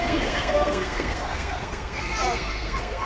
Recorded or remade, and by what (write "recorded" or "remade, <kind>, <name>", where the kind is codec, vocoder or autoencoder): remade, codec, SNAC